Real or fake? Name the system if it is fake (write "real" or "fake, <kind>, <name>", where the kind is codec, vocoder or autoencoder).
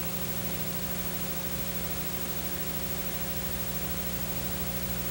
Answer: real